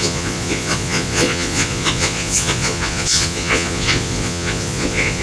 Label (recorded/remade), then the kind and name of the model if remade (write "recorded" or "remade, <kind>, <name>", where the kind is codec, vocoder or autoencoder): remade, vocoder, Vocos